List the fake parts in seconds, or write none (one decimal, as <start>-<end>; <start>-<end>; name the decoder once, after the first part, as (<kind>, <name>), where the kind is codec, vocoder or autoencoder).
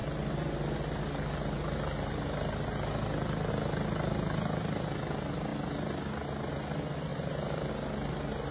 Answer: 7.1-7.7 (vocoder, BigVGAN v2)